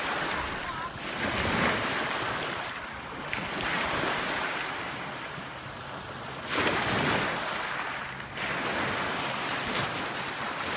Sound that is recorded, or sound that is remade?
recorded